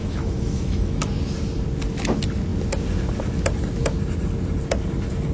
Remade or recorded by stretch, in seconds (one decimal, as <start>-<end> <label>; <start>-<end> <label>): 0.0-1.0 remade; 1.0-5.3 recorded